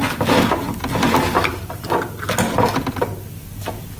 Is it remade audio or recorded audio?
recorded